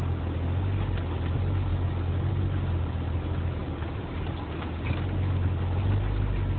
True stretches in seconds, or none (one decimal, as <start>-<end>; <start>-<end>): 0.0-6.6